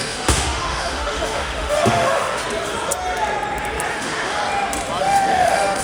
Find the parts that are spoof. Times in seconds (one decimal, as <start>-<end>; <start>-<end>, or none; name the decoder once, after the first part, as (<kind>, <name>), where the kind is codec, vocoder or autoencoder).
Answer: 0.0-2.4 (autoencoder, DAC-VAE); 3.9-4.4; 5.0-5.8